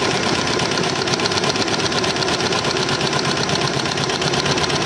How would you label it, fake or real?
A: fake